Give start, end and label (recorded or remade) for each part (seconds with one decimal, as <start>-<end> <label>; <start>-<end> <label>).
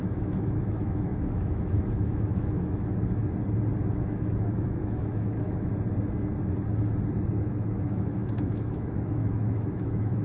0.0-3.2 remade; 3.2-3.9 recorded; 3.9-5.7 remade; 5.7-7.4 recorded; 7.4-10.2 remade